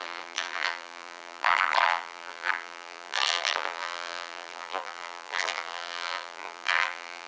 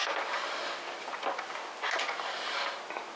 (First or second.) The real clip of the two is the second